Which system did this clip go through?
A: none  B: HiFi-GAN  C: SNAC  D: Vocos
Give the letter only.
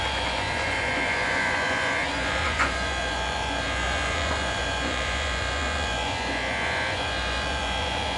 D